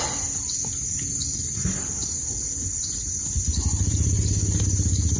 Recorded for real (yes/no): yes